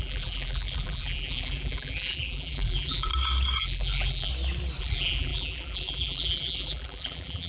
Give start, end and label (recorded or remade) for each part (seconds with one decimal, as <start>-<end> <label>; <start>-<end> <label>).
0.0-3.1 remade; 3.1-3.6 recorded; 3.6-4.3 remade; 4.3-4.8 recorded; 4.8-7.5 remade